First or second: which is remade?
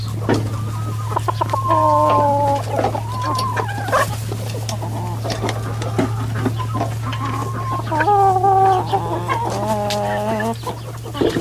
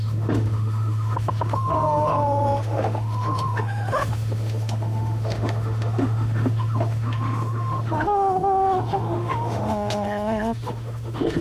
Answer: second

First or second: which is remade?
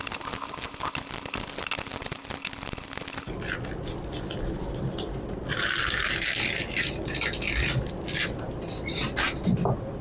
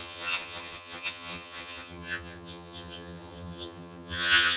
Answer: second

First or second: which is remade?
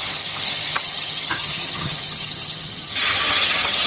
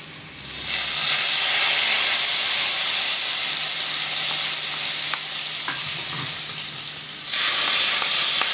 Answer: first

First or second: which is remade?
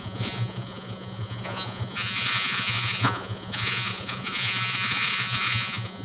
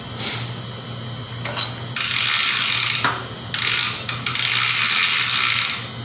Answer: first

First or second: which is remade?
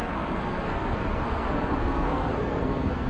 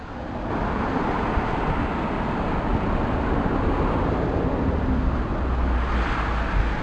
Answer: first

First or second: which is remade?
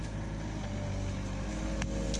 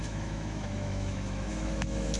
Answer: second